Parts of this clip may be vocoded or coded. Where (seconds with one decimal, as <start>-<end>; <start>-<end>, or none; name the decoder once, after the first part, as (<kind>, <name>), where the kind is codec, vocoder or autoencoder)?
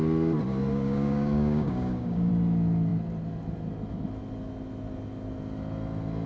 0.7-2.3 (codec, DAC)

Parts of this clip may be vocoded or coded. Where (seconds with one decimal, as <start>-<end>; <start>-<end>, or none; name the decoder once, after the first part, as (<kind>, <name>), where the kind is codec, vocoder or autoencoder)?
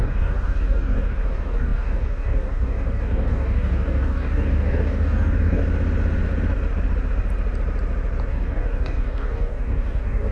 0.0-5.6 (codec, DAC); 8.3-10.3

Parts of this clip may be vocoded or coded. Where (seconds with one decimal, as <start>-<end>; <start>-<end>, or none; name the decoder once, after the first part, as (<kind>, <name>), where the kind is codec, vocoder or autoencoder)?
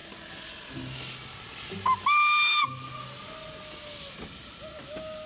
none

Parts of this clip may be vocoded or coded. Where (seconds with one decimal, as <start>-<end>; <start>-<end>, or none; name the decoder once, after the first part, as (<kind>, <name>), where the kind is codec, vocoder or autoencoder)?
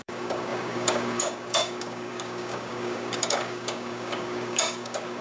0.0-5.2 (codec, DAC)